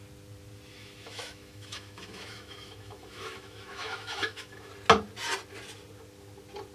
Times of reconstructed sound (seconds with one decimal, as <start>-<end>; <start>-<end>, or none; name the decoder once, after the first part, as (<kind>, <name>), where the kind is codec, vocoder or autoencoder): 0.7-4.7 (autoencoder, DAC-VAE)